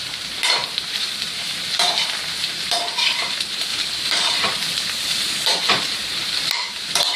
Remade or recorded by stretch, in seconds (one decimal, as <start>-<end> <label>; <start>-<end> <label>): 0.0-7.2 remade